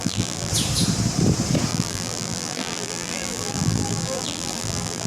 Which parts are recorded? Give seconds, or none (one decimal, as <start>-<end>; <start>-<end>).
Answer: 0.5-1.7

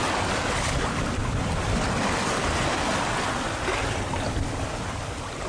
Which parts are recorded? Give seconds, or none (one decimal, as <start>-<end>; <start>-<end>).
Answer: 0.0-5.5